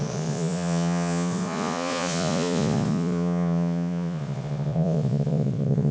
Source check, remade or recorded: remade